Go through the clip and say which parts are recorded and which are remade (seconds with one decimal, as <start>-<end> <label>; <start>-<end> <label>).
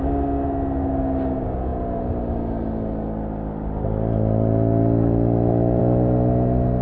0.0-6.8 recorded